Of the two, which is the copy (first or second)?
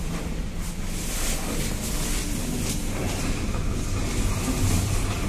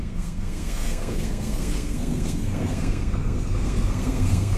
second